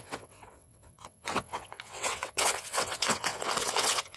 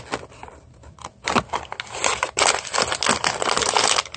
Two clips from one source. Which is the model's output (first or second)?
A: first